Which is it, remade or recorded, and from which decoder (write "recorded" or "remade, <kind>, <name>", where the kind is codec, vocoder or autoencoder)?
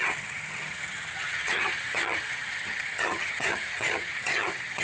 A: remade, vocoder, HiFi-GAN